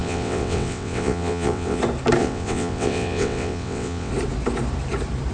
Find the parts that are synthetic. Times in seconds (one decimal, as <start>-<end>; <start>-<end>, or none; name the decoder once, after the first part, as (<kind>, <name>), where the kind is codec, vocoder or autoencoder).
0.0-1.8 (vocoder, WaveNeXt); 2.2-4.1